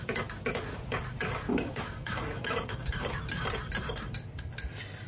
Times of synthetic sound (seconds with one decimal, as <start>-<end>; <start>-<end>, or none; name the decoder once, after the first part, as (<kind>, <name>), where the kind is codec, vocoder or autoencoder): 1.5-3.1 (codec, DAC)